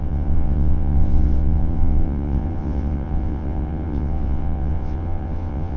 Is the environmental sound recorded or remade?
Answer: remade